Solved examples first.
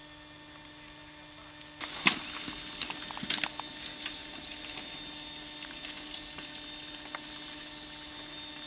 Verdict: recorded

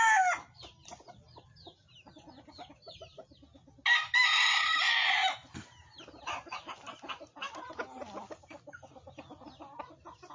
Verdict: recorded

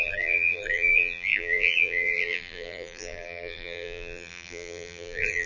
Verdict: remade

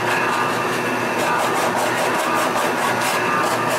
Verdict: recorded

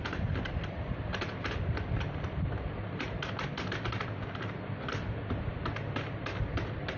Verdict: recorded